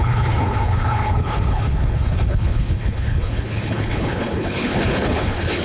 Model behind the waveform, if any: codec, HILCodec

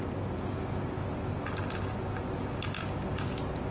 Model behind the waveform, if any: none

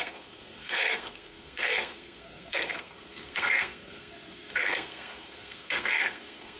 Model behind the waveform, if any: codec, SNAC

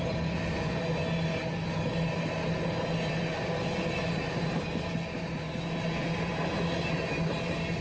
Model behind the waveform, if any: none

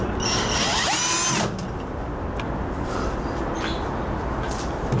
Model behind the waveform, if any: none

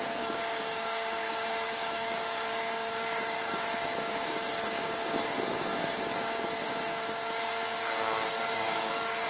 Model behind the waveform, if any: codec, DAC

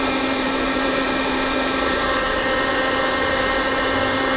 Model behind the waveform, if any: vocoder, BigVGAN v2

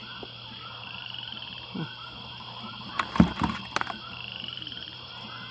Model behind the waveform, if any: vocoder, BigVGAN v2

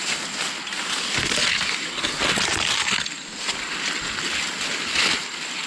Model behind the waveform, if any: none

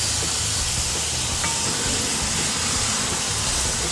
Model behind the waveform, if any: none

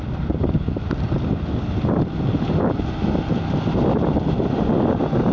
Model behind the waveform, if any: none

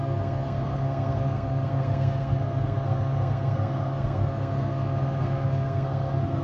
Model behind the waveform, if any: codec, SNAC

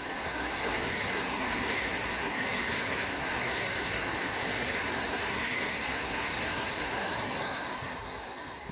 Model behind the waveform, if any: codec, SNAC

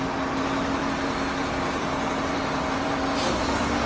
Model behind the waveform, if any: vocoder, BigVGAN v2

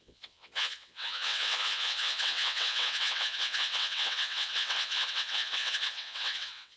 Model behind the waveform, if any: vocoder, WaveNeXt